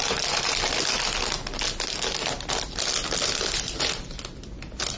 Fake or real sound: real